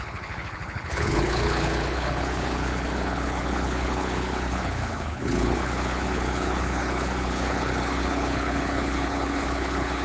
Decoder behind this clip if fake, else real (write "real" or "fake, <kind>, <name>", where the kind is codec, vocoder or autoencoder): fake, codec, HILCodec